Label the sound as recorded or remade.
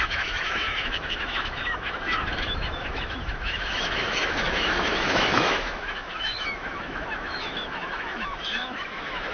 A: remade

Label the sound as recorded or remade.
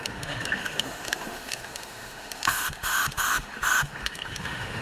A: remade